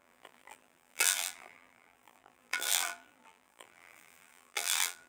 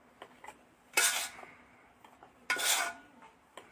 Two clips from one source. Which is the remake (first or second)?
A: first